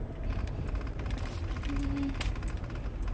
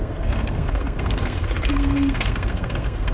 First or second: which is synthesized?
second